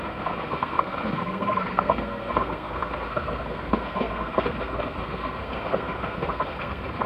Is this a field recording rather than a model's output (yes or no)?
no